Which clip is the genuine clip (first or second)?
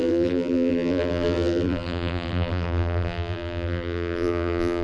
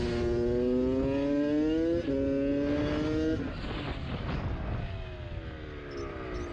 second